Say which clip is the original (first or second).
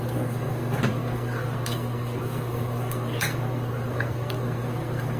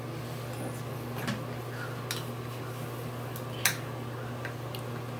second